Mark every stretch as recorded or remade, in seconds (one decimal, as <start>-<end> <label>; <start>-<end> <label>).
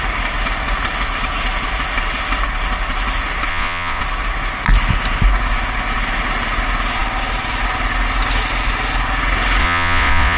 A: 0.0-3.5 recorded; 3.5-4.0 remade; 4.0-9.6 recorded; 9.6-10.4 remade